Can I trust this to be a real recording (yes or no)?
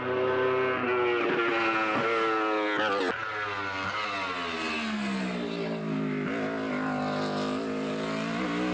yes